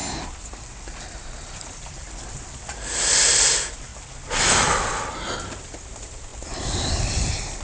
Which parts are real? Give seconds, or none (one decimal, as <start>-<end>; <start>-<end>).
0.0-1.5; 3.9-5.1